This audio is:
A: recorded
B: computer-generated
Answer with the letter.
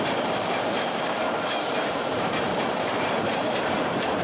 B